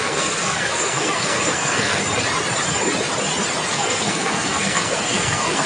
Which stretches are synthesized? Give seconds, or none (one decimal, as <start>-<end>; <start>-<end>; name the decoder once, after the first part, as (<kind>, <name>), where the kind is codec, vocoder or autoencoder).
0.0-2.0 (codec, SNAC); 3.7-5.7